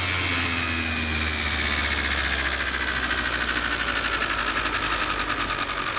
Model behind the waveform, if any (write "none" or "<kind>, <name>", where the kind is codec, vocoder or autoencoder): none